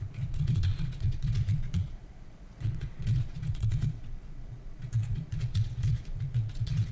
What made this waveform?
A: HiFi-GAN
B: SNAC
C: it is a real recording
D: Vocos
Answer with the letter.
D